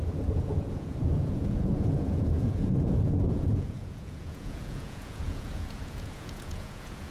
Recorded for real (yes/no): no